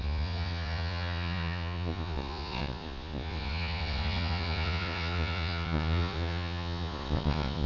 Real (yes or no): no